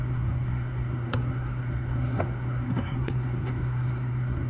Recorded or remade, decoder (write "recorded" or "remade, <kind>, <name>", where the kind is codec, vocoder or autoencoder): remade, codec, SNAC